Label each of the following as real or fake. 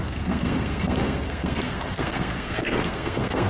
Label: fake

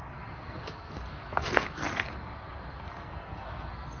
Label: fake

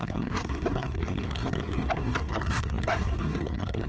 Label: fake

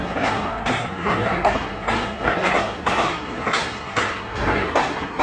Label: fake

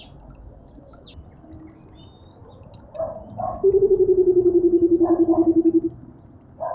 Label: real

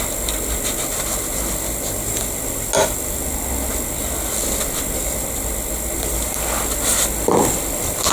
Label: real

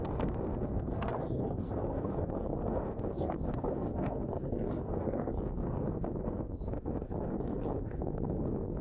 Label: fake